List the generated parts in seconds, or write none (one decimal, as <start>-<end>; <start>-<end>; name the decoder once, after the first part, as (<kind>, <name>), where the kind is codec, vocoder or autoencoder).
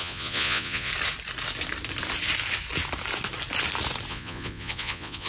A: 0.0-0.9 (vocoder, Vocos); 4.1-5.3